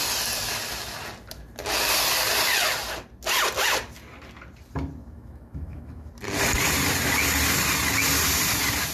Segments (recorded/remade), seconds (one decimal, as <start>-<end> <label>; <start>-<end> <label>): 0.0-5.0 recorded; 5.0-6.1 remade; 6.1-8.9 recorded